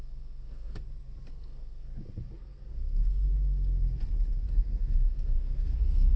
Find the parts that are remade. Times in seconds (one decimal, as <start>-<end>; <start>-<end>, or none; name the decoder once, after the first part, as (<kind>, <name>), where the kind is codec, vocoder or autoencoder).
0.0-0.7 (codec, SNAC); 1.3-1.9; 2.4-3.3; 4.5-6.2